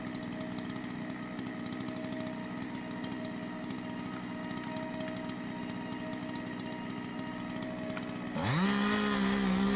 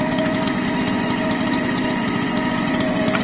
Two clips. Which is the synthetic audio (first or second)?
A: second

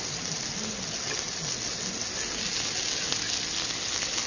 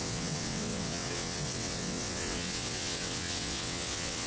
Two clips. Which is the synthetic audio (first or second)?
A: second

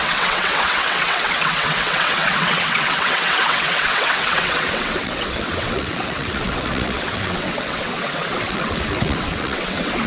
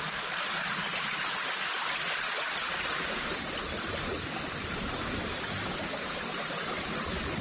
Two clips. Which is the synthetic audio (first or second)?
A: first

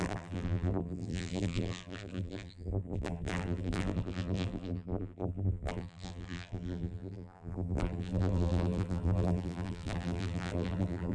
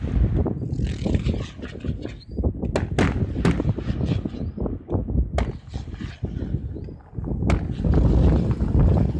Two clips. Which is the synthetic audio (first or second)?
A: first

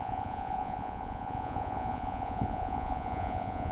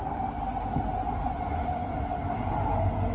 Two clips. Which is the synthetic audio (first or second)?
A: first